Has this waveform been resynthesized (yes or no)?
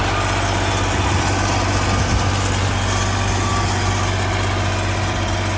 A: no